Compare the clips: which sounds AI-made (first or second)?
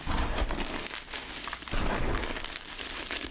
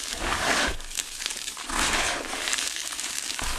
second